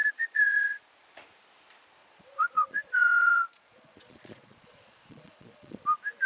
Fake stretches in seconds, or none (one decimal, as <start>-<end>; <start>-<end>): 0.0-0.8; 2.0-5.8